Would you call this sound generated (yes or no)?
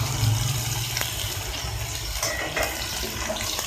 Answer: no